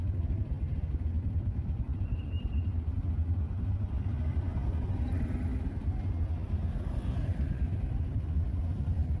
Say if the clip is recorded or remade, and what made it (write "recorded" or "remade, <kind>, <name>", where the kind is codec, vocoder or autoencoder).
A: recorded